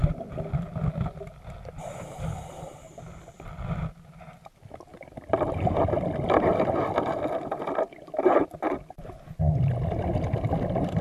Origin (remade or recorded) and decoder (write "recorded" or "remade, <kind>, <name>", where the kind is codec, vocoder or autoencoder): recorded